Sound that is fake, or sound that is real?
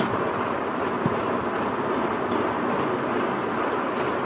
real